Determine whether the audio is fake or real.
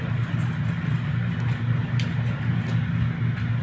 real